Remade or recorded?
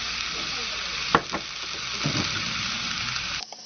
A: recorded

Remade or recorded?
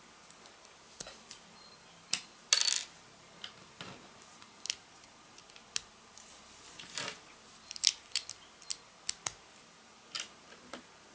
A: recorded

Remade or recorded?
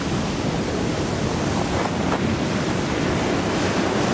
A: remade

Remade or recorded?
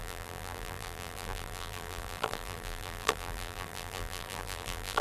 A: remade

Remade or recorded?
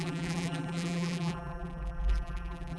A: remade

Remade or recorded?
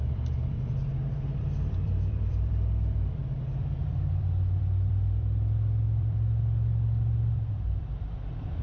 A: remade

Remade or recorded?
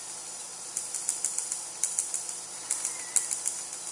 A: recorded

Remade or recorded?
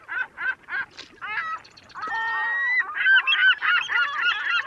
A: recorded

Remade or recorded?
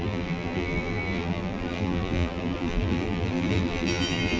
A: remade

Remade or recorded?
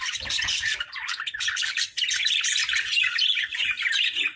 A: remade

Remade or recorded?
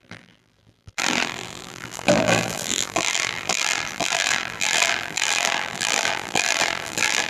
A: remade